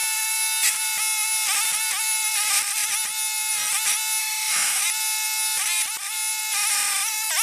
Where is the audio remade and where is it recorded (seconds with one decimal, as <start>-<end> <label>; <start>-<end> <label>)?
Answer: 0.0-4.2 recorded; 4.2-4.8 remade; 4.8-7.4 recorded